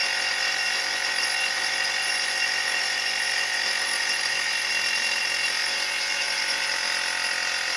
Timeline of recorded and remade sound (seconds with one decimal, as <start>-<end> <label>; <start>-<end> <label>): 0.0-4.7 remade; 4.7-5.6 recorded; 5.6-6.7 remade; 6.7-7.8 recorded